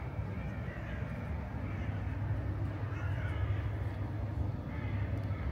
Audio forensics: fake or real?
real